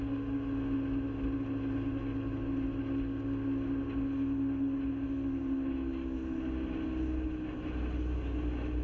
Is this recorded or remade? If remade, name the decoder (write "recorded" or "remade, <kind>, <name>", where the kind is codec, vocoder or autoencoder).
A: recorded